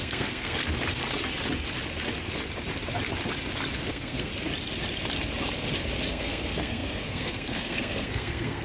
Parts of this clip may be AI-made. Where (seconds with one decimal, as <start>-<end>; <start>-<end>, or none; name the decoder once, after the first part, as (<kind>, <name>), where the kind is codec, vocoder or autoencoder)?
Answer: 0.0-0.6 (codec, SNAC); 3.9-4.3; 6.1-8.6